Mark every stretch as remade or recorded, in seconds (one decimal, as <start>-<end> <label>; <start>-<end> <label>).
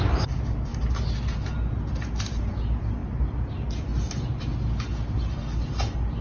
0.0-6.2 recorded